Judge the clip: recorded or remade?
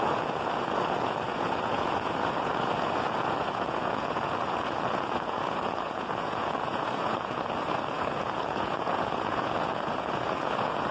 remade